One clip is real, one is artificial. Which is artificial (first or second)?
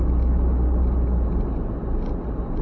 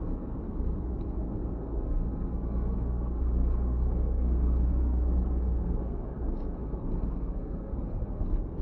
second